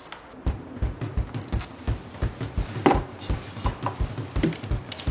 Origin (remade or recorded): recorded